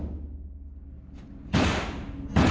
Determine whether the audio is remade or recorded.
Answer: recorded